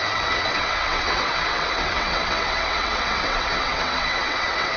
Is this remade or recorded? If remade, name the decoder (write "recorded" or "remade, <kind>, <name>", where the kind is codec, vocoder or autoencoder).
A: remade, vocoder, WaveNeXt